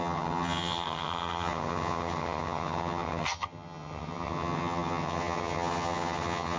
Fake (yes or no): yes